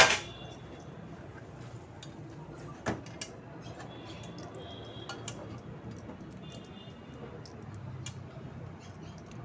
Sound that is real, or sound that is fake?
real